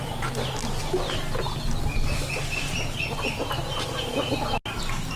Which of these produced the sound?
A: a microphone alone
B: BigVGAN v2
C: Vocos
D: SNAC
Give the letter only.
A